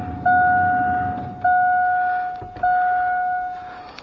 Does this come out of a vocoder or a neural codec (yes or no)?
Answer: no